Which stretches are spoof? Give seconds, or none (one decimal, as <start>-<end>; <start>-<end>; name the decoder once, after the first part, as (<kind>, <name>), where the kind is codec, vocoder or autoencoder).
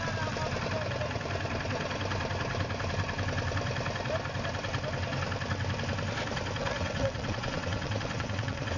6.6-8.8 (vocoder, WaveNeXt)